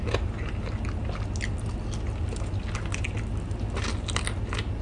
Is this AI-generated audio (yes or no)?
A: no